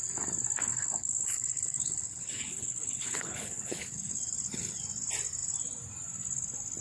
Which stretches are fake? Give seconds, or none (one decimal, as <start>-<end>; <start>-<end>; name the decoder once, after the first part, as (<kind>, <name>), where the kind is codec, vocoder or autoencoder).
0.7-4.8 (codec, HILCodec)